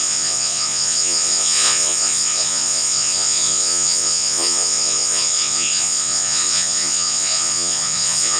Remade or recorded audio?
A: remade